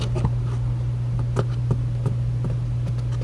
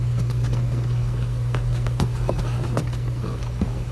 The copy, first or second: second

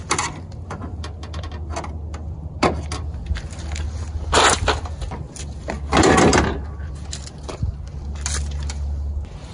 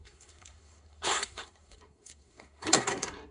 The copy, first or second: second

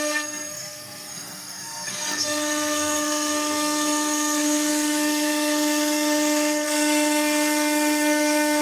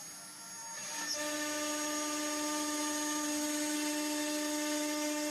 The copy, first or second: first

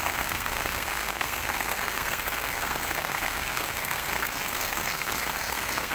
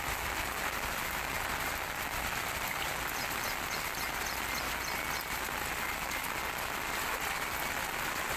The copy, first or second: first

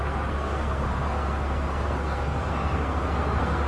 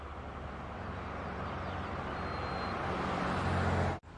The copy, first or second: first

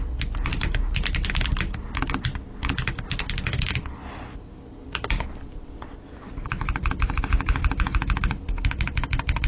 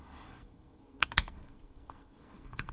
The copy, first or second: second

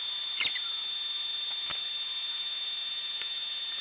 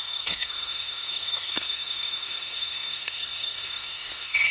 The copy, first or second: second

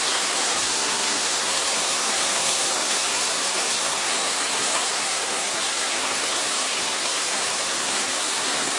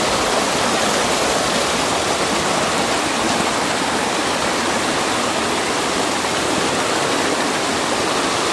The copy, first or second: first